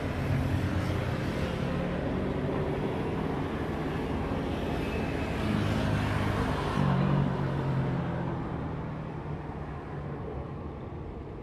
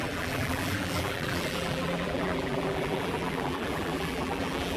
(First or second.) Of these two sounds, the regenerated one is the second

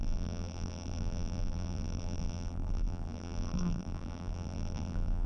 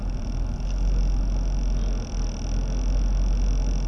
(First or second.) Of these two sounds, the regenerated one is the first